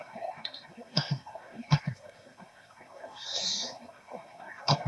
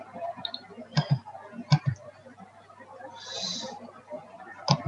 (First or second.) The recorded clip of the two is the second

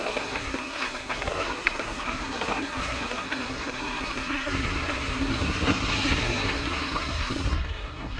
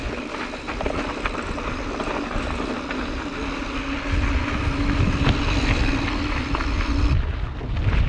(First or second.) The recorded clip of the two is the second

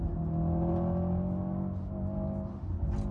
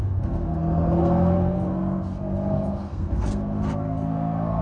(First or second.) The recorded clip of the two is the first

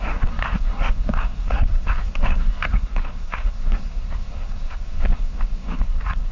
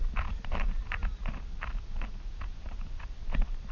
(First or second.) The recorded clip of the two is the second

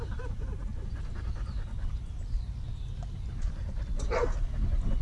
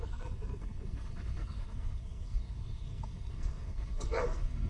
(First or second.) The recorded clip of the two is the first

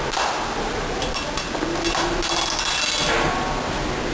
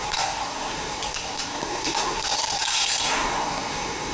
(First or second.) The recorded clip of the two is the first